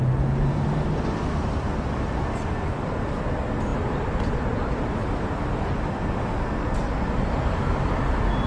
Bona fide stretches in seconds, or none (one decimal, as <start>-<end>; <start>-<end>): 0.0-8.5